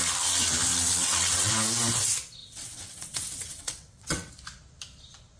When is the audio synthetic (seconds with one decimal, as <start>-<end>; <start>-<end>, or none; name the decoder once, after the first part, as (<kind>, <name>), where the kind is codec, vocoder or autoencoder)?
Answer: 0.7-1.5 (vocoder, WaveNeXt); 2.4-4.3